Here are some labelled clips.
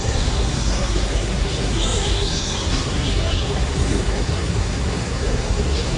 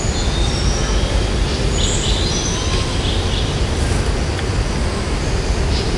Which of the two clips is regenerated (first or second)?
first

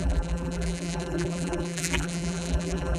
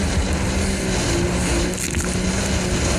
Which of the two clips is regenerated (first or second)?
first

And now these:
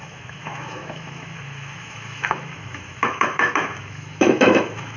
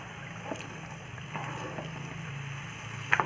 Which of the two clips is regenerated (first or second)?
first